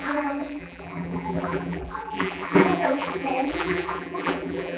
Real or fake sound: fake